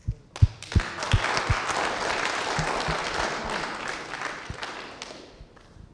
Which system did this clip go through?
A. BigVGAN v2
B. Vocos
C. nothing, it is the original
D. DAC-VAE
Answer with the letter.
C